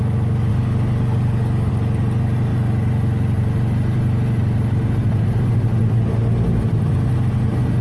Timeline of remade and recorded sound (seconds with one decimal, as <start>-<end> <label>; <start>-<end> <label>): 0.0-0.5 recorded; 0.5-1.7 remade; 1.7-7.8 recorded